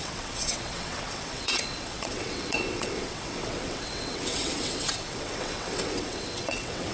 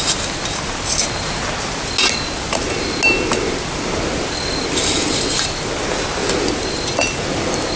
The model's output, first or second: first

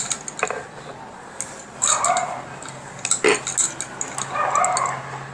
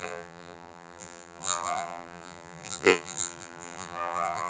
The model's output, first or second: second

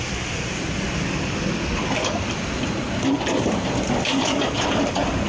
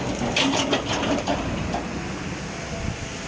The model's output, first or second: first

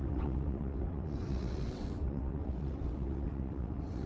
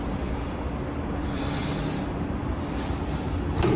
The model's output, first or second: first